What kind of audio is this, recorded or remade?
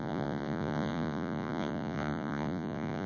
remade